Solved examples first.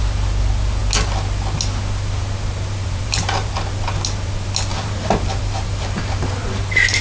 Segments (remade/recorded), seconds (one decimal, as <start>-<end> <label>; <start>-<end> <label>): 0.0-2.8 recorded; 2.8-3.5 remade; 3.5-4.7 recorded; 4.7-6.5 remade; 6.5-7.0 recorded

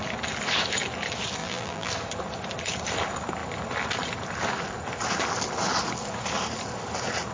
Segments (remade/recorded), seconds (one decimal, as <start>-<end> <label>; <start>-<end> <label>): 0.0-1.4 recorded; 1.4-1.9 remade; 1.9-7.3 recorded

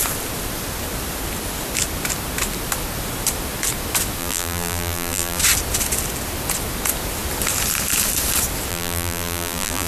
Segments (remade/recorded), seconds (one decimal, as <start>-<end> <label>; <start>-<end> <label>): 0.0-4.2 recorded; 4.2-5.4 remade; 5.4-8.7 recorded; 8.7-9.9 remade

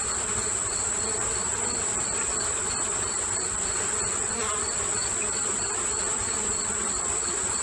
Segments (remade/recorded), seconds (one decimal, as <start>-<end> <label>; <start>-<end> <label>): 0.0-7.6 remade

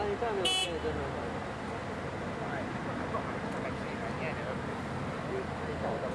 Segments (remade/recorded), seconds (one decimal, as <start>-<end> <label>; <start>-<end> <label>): 0.0-6.1 recorded